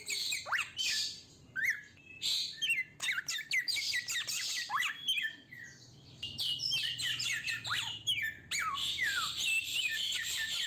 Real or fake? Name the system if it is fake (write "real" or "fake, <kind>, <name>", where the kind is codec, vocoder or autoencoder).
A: real